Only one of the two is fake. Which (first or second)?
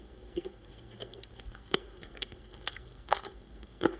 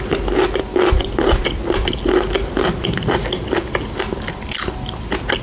first